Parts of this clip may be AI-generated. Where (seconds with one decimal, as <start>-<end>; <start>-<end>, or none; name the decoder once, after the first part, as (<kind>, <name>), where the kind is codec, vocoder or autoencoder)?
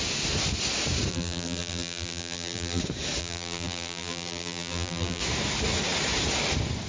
1.1-2.8 (vocoder, BigVGAN v2); 3.2-5.2